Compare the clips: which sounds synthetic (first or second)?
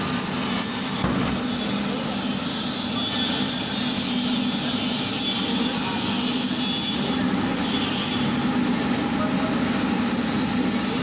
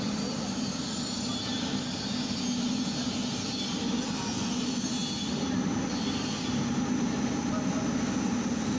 second